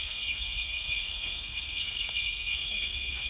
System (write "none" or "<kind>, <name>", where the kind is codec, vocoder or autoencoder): codec, SNAC